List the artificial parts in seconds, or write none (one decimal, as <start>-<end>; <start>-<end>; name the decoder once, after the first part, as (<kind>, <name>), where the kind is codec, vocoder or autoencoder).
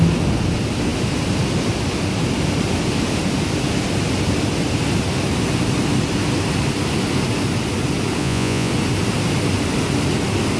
8.2-8.7 (vocoder, Vocos)